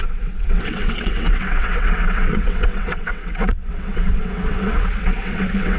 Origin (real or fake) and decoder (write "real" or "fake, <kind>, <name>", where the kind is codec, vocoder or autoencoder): fake, vocoder, WaveNeXt